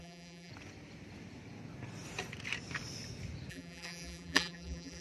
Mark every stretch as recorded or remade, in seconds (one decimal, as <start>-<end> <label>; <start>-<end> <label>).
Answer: 0.0-0.5 remade; 0.5-3.5 recorded; 3.5-5.0 remade